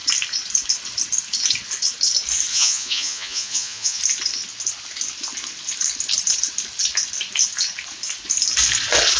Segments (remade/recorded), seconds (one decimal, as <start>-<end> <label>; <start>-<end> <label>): 0.0-2.5 recorded; 2.5-4.0 remade; 4.0-9.2 recorded